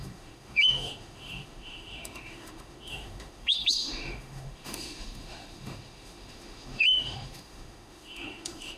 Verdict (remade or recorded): remade